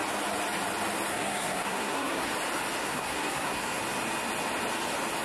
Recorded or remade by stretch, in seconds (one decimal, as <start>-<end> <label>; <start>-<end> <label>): 0.0-1.1 recorded; 1.1-2.3 remade; 2.3-2.8 recorded; 2.8-3.8 remade; 3.8-5.2 recorded